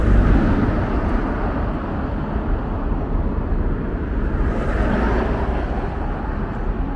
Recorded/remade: recorded